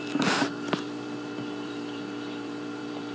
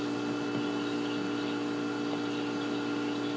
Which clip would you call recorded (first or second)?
second